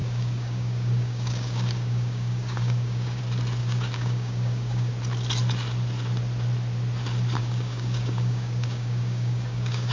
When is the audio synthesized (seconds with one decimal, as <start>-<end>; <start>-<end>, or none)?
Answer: 0.0-3.2; 3.6-4.9; 7.4-9.9